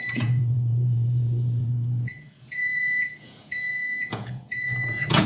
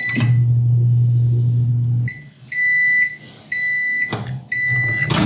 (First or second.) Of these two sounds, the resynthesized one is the first